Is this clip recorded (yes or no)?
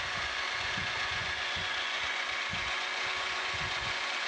no